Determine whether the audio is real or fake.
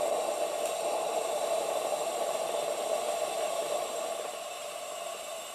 fake